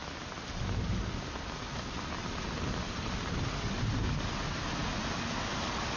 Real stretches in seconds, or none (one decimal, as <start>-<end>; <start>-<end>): 0.0-3.3; 4.8-5.6